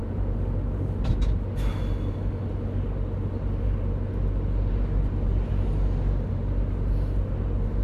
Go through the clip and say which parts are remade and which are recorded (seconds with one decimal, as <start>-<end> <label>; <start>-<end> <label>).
0.0-7.8 recorded